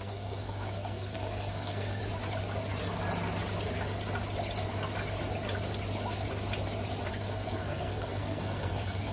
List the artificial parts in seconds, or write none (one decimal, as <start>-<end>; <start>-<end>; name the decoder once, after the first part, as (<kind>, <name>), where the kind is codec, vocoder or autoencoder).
0.0-2.0 (codec, SNAC); 7.1-9.1